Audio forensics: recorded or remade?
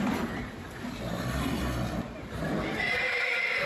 remade